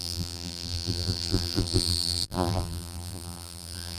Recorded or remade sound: remade